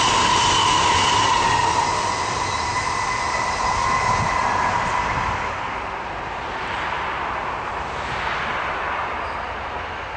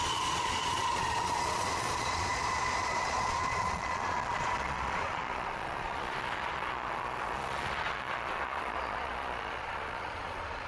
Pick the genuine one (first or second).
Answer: first